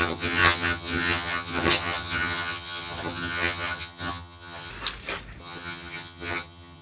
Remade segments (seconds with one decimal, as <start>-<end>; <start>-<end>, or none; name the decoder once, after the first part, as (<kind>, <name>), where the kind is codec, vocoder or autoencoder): 0.0-4.7 (vocoder, HiFi-GAN); 5.4-6.8